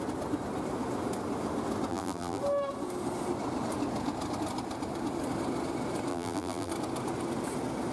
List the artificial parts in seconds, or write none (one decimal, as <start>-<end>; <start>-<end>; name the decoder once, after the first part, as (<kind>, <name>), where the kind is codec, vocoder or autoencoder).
1.9-2.4 (vocoder, BigVGAN v2); 6.1-6.7